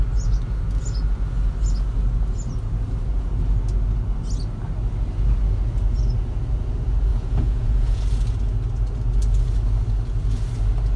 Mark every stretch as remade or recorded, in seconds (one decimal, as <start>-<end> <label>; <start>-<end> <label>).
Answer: 0.0-7.1 recorded; 7.1-8.0 remade; 8.0-11.0 recorded